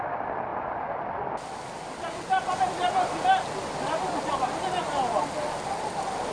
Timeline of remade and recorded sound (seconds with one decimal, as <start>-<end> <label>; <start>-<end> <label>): 0.0-6.3 recorded